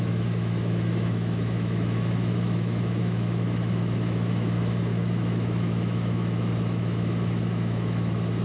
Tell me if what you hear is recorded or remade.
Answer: remade